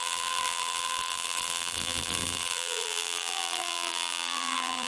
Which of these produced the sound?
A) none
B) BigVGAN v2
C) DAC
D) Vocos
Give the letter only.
B